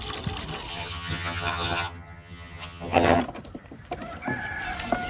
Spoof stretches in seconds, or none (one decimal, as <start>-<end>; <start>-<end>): 0.7-3.2